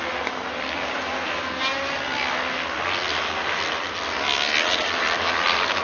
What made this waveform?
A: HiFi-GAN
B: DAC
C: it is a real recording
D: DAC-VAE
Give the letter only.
C